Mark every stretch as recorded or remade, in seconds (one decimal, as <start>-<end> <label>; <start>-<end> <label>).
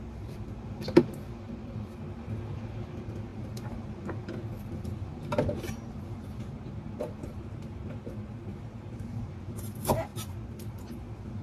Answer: 0.0-3.3 recorded; 3.3-7.9 remade; 7.9-8.5 recorded; 8.5-9.7 remade; 9.7-11.4 recorded